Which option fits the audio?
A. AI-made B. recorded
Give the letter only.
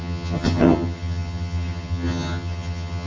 A